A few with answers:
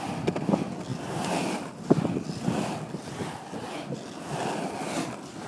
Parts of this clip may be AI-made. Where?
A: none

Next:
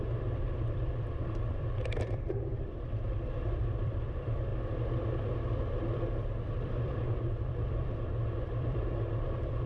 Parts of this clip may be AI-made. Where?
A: 0.0-4.5; 6.6-9.7

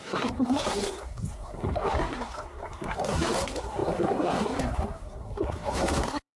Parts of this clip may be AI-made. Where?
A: 0.0-6.4

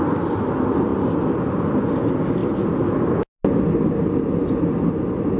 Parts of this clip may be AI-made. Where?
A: none

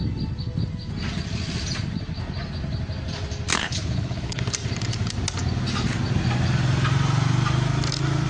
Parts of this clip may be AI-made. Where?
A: 3.5-4.4